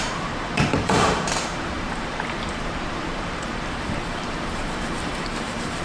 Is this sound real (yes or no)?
no